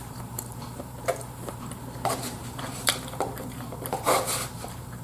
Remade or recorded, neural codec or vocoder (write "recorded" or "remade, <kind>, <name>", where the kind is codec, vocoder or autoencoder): remade, vocoder, BigVGAN v2